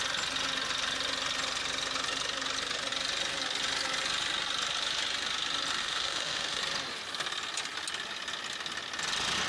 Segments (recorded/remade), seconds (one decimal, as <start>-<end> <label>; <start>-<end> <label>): 0.0-5.8 recorded; 5.8-6.6 remade; 6.6-9.5 recorded